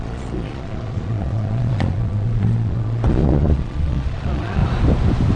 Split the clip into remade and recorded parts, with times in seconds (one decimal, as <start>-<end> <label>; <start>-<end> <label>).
0.0-4.6 remade; 4.6-5.4 recorded

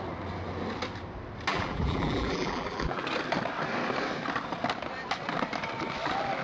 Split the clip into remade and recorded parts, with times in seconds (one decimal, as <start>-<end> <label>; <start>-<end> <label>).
0.0-1.5 recorded; 1.5-3.0 remade; 3.0-6.4 recorded

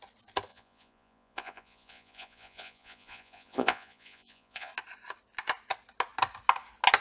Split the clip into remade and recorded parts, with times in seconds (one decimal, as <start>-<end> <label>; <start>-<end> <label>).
0.0-0.5 recorded; 0.5-4.7 remade; 4.7-7.0 recorded

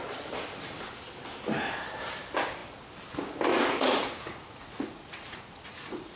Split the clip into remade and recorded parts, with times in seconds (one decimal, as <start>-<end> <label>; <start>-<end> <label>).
0.0-3.5 recorded; 3.5-6.2 remade

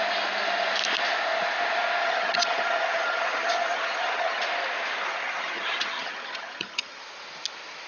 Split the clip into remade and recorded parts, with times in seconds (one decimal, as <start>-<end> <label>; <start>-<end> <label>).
0.0-2.0 recorded; 2.0-4.4 remade; 4.4-5.0 recorded; 5.0-7.0 remade; 7.0-7.9 recorded